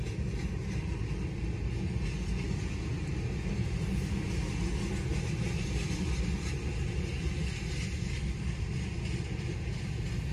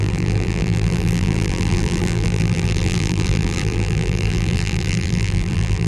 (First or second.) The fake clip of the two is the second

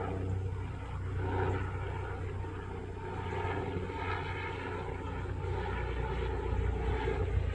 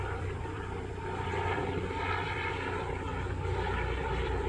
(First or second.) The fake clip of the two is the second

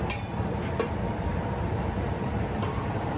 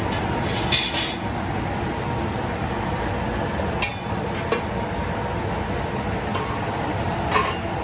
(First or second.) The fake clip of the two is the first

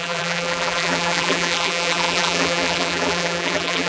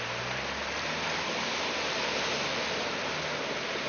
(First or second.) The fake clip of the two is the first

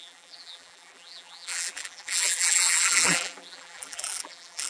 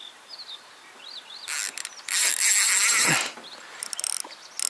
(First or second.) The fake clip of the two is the first